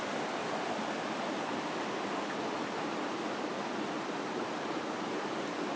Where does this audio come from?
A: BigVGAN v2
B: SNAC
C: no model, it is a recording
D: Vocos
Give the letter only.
C